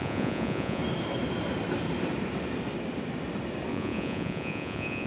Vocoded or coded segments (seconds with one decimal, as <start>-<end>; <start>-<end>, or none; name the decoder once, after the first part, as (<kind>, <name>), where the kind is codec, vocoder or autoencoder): 0.0-0.8 (vocoder, Vocos); 3.7-5.1